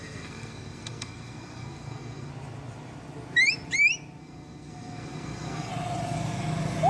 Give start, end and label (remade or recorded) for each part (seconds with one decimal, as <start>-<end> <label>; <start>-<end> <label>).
0.0-2.3 remade; 2.3-4.2 recorded; 4.2-5.7 remade; 5.7-6.9 recorded